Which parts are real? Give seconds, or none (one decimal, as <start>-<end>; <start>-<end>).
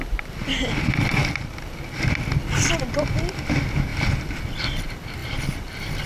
0.0-1.2; 1.7-5.2